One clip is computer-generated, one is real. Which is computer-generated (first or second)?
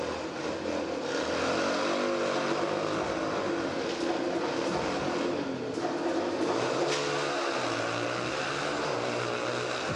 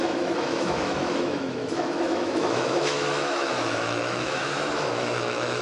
second